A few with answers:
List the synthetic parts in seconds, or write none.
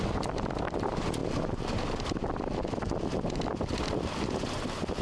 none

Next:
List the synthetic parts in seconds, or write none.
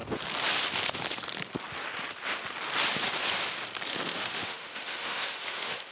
3.9-5.9 (autoencoder, DAC-VAE)